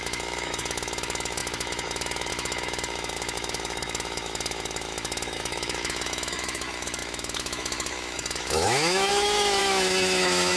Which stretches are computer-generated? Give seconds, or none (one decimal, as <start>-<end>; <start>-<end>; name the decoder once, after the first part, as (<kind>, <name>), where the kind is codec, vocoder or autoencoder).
0.0-10.6 (autoencoder, DAC-VAE)